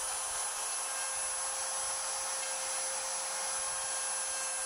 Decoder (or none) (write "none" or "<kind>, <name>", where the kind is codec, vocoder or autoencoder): none